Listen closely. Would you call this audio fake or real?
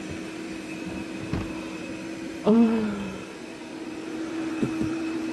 fake